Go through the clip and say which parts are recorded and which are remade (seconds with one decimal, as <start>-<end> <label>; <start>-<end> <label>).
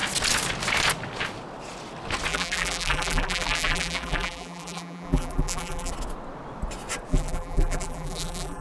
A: 0.0-2.3 recorded; 2.3-5.9 remade; 5.9-7.1 recorded; 7.1-8.6 remade